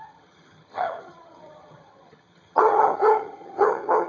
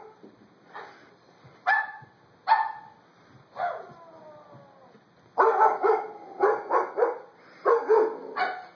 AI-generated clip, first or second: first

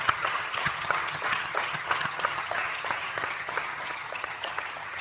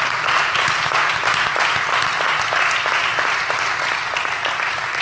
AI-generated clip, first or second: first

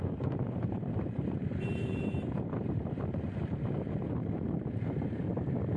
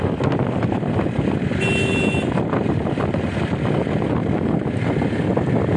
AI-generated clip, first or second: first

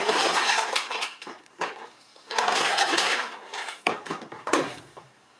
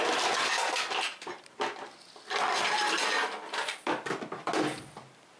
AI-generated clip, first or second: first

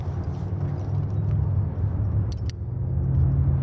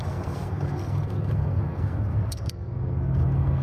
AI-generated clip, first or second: second